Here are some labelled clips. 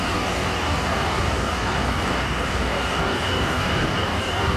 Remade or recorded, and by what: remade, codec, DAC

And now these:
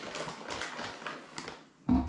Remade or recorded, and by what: recorded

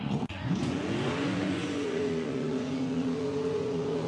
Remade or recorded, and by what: remade, vocoder, Vocos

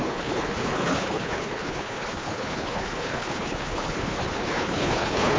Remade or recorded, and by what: remade, codec, HILCodec